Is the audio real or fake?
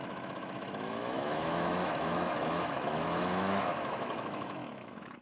fake